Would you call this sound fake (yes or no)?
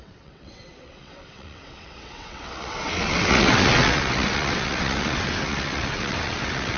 yes